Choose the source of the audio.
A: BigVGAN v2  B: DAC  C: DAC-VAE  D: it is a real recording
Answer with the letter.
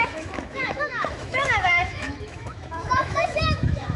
C